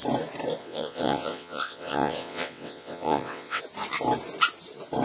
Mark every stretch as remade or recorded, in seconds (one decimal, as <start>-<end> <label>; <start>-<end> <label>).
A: 0.0-0.6 recorded; 0.6-3.6 remade; 3.6-5.0 recorded